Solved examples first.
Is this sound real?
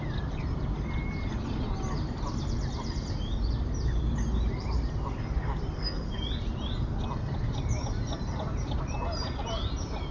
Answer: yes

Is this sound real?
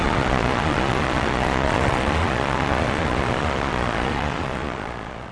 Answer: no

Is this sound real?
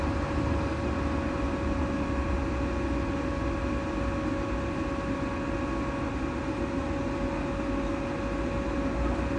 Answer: yes